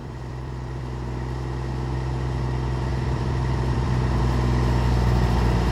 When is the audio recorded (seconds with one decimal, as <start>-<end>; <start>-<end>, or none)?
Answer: 0.8-2.9; 4.2-5.7